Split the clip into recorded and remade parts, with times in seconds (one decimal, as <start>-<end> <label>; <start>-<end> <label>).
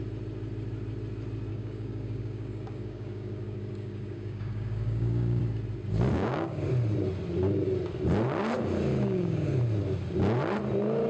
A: 0.0-1.5 recorded; 1.5-5.4 remade; 5.4-6.1 recorded; 6.1-6.7 remade; 6.7-8.9 recorded; 8.9-9.6 remade; 9.6-11.1 recorded